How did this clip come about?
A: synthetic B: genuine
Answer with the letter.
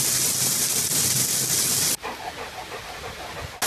B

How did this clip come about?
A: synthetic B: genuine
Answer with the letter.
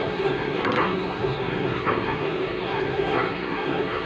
A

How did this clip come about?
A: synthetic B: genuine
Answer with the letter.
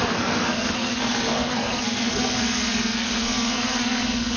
A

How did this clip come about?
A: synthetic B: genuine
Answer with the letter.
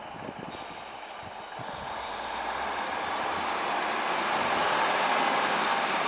B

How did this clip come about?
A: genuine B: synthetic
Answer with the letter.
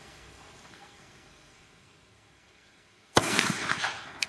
B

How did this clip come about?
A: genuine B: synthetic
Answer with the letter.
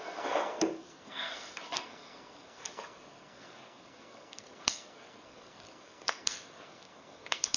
B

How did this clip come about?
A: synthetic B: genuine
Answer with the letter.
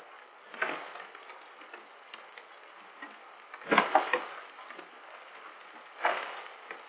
B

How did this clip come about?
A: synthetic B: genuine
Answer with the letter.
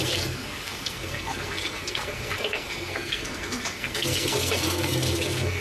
A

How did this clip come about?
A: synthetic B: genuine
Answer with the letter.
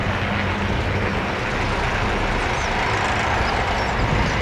B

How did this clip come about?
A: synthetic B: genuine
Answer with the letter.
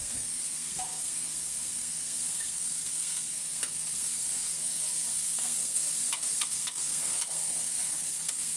A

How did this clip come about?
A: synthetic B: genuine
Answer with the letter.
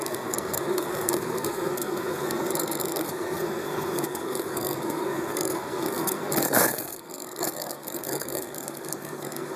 A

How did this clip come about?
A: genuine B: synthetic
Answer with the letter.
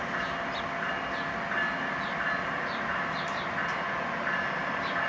A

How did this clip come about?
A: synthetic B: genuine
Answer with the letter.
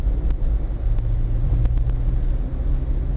B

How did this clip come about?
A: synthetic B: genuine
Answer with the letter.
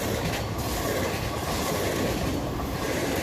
B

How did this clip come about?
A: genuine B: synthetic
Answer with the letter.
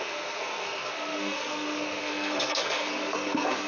B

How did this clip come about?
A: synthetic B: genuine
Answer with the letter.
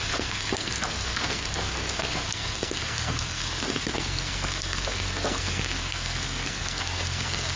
A